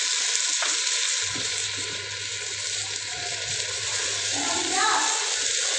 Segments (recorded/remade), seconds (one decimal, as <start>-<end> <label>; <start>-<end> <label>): 0.0-1.6 recorded; 1.6-5.0 remade; 5.0-5.8 recorded